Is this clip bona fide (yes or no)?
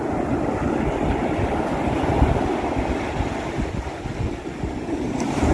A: yes